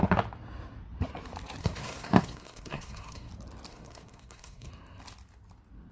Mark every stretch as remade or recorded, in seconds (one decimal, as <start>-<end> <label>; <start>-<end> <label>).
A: 0.0-1.6 recorded; 1.6-3.3 remade; 3.3-3.7 recorded; 3.7-4.7 remade; 4.7-5.9 recorded